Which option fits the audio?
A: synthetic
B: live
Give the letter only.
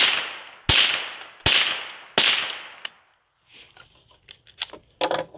B